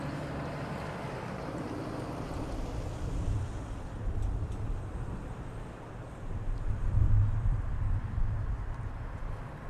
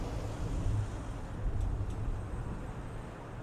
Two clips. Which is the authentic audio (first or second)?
second